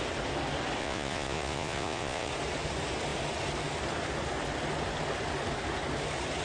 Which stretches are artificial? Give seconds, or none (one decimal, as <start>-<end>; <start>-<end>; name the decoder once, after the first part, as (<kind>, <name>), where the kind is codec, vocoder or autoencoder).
0.8-2.3 (vocoder, Vocos)